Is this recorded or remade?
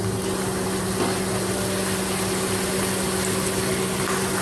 recorded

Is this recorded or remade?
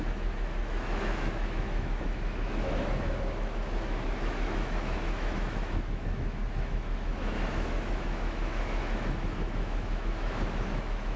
remade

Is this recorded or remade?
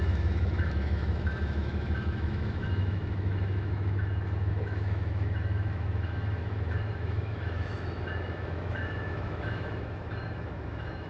remade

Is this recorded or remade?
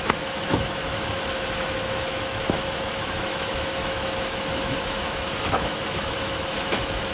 remade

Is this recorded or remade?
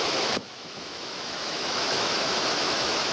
remade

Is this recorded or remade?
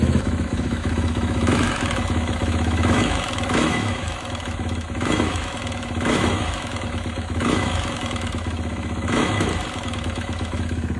remade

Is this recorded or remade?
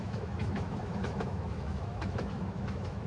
remade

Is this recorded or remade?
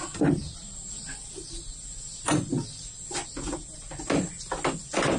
recorded